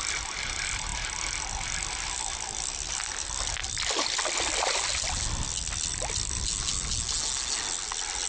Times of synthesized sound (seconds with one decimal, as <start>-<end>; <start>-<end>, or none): none